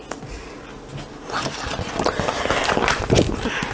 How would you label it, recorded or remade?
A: recorded